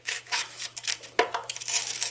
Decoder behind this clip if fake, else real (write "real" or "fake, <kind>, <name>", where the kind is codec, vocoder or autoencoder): fake, autoencoder, DAC-VAE